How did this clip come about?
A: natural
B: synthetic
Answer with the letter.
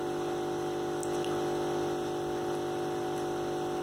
A